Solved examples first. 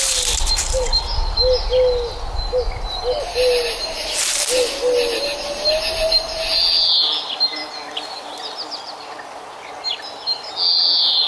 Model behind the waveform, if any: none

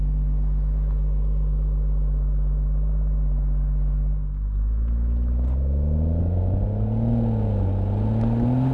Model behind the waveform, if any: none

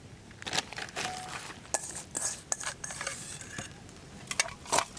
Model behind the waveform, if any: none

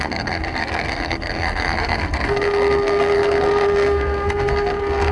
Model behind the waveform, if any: codec, SNAC